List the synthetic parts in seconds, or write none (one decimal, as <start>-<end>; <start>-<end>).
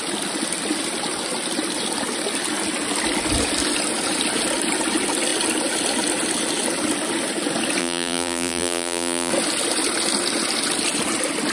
7.8-9.3